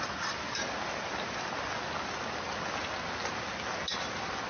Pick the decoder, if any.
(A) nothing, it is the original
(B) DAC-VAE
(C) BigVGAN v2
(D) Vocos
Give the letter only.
A